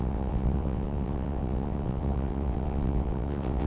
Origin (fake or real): fake